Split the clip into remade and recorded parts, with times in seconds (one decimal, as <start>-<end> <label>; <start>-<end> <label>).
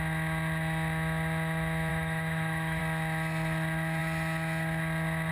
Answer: 0.0-1.9 recorded; 1.9-2.8 remade; 2.8-5.3 recorded